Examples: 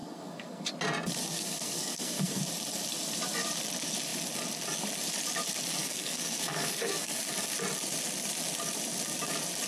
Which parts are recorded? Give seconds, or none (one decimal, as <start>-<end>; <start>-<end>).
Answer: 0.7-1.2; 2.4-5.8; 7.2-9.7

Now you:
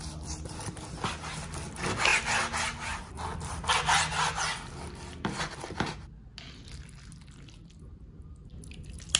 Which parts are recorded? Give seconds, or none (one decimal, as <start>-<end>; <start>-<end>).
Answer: 0.0-9.2

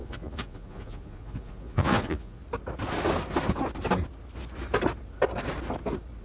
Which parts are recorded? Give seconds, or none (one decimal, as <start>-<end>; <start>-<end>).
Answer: 2.4-6.2